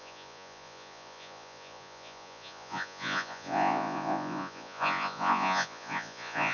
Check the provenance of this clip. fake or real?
fake